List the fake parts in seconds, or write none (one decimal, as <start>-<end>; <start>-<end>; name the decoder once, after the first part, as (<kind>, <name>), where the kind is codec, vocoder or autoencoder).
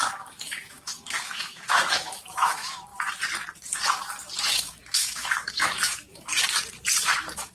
0.0-2.9 (autoencoder, DAC-VAE); 4.4-6.3; 7.0-7.5